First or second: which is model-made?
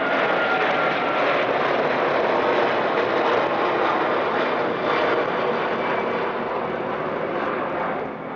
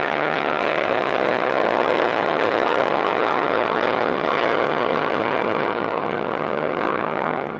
second